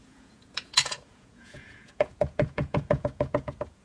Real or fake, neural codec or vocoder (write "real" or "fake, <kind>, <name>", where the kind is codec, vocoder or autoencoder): fake, vocoder, Vocos